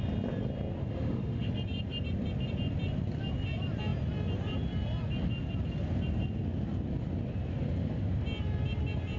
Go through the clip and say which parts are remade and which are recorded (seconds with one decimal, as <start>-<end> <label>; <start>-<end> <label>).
0.0-0.8 recorded; 0.8-1.5 remade; 1.5-9.2 recorded